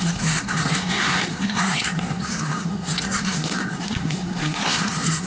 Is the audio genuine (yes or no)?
no